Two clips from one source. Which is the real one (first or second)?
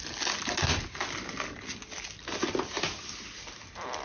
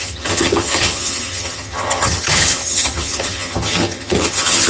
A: first